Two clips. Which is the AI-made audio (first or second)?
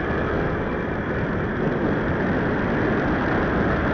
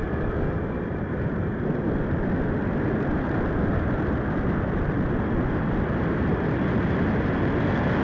second